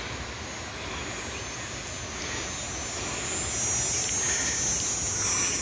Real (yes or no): yes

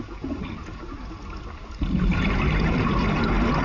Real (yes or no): yes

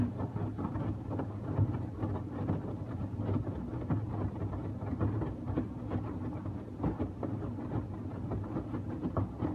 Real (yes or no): yes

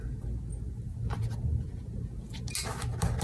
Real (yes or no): yes